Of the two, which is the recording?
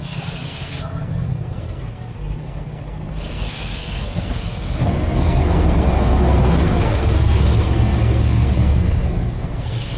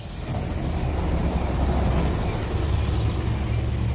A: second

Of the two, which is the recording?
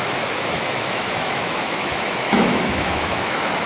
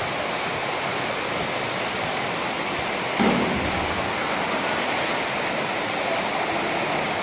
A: second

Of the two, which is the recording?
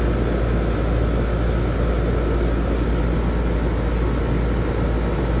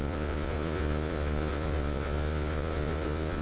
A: first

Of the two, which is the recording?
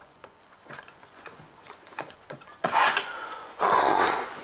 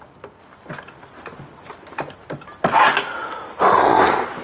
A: second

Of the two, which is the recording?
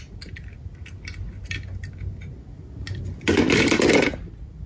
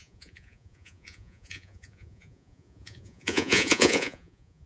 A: first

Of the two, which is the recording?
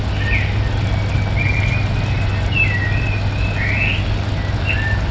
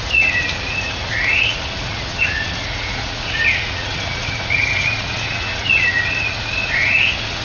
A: first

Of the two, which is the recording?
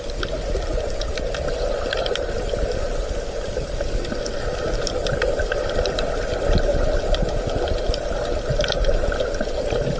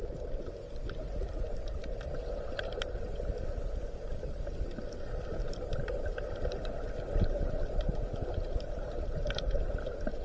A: first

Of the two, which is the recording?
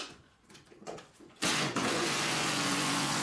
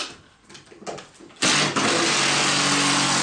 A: second